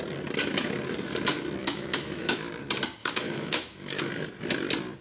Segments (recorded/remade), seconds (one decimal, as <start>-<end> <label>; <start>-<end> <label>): 0.0-1.6 recorded; 1.6-2.5 remade; 2.5-3.0 recorded; 3.0-4.0 remade; 4.0-5.0 recorded